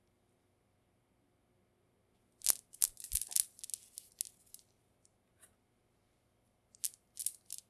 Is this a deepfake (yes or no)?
no